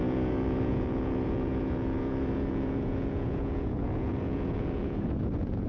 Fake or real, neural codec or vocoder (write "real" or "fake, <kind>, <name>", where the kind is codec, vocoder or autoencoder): fake, vocoder, Vocos